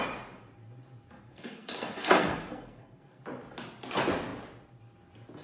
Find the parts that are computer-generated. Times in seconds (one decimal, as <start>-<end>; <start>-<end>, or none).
1.2-3.2